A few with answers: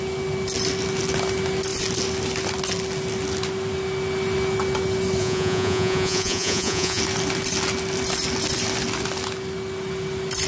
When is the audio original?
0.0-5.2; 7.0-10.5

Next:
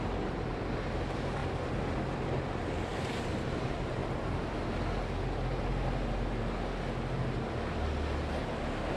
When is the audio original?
1.4-2.5; 4.0-9.0

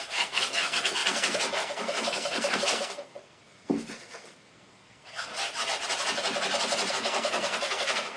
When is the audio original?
5.3-6.9

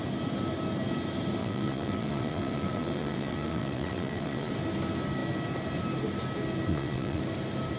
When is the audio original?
0.0-1.4; 4.5-6.7; 7.2-7.8

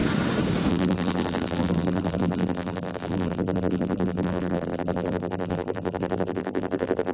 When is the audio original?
0.0-0.7

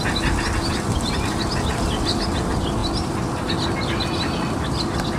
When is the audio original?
0.0-5.2